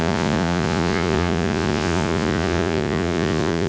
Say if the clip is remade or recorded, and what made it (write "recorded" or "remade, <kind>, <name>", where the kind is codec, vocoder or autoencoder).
remade, vocoder, Vocos